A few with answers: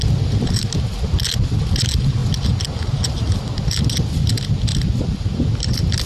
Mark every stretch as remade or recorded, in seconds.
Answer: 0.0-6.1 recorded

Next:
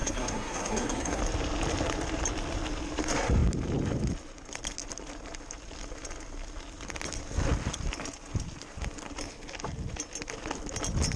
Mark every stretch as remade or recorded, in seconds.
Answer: 0.0-1.2 remade; 1.2-11.2 recorded

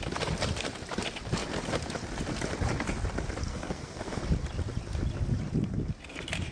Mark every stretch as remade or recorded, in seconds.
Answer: 0.0-3.5 recorded; 3.5-4.2 remade; 4.2-6.5 recorded

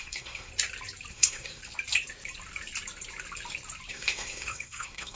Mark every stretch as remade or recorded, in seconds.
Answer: 0.0-0.5 remade; 0.5-1.1 recorded; 1.1-1.6 remade; 1.6-3.9 recorded; 3.9-5.2 remade

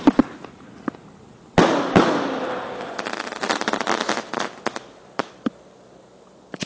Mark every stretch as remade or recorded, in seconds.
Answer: 0.0-6.7 recorded